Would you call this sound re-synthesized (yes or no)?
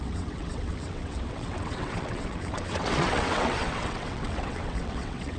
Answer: yes